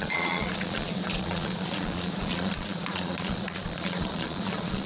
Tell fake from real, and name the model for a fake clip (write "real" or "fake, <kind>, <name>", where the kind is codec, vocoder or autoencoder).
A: fake, vocoder, Vocos